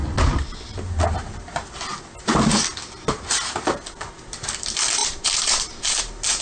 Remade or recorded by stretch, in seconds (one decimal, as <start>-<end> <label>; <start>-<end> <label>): 0.0-5.0 recorded; 5.0-6.0 remade; 6.0-6.4 recorded